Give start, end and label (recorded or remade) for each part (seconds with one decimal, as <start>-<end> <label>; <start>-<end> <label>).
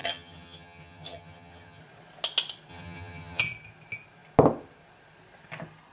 0.0-1.8 remade; 1.8-2.7 recorded; 2.7-3.4 remade; 3.4-5.9 recorded